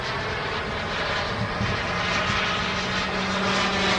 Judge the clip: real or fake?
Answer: real